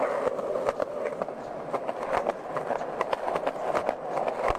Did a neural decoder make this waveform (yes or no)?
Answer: no